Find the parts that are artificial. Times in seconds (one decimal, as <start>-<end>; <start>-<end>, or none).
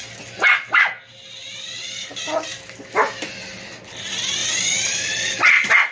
none